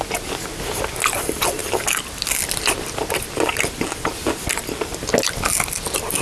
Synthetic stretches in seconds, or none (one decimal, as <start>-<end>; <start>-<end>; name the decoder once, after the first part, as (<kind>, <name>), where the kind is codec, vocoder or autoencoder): none

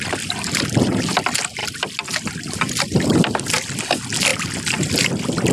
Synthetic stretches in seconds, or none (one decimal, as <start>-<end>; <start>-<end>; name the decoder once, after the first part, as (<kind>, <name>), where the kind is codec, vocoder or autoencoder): none

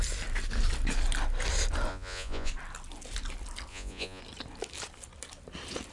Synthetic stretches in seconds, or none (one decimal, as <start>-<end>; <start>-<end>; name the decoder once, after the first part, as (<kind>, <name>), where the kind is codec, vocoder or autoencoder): 1.9-2.5 (vocoder, Vocos); 3.7-4.2